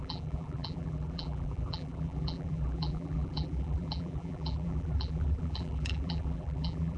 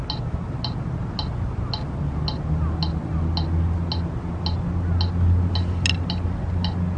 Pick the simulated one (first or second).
first